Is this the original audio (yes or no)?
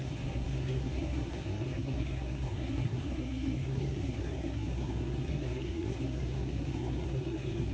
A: no